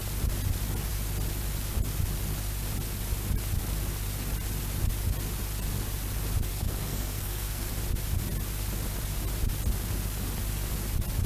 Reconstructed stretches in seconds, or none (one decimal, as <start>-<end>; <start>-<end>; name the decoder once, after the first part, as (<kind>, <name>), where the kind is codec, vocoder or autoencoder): 6.5-7.7 (codec, SNAC)